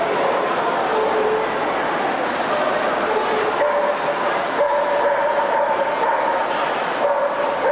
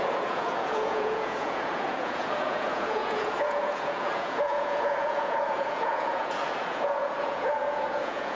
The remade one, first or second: second